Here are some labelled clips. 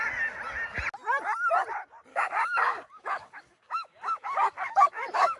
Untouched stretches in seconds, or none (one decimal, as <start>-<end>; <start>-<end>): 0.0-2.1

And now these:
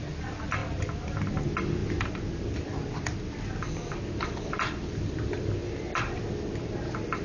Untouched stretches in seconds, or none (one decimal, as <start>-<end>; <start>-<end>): 0.0-7.2

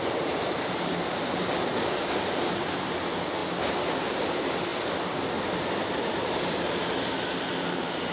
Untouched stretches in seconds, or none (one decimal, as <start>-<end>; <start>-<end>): 3.4-4.0; 4.7-5.6; 6.8-7.3